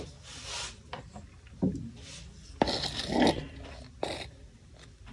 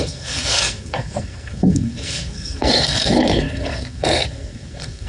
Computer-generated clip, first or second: second